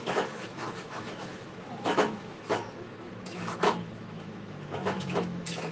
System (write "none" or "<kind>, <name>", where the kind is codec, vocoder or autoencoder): autoencoder, DAC-VAE